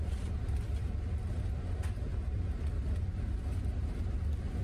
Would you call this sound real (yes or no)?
yes